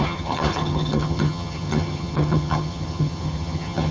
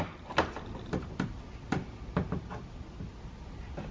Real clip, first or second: second